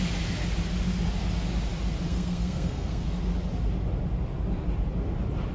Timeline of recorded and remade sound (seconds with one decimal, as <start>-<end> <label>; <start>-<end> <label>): 0.0-2.1 recorded; 2.1-3.2 remade; 3.2-5.5 recorded